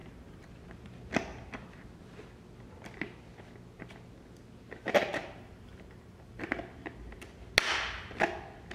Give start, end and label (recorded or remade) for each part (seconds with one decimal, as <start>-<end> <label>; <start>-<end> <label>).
0.0-0.5 remade; 0.5-5.2 recorded; 5.2-6.6 remade; 6.6-8.7 recorded